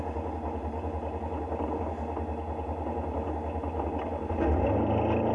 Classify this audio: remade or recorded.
recorded